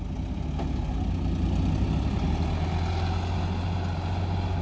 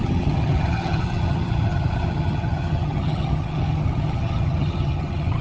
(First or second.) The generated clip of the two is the second